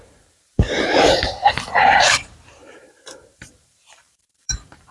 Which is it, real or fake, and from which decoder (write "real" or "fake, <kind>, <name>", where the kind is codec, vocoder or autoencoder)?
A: fake, vocoder, BigVGAN v2